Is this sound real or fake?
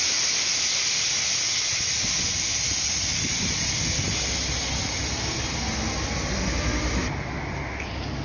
real